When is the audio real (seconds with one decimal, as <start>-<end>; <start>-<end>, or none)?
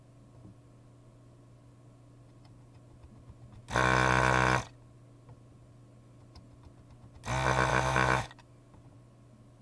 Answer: 0.0-7.7; 8.3-9.6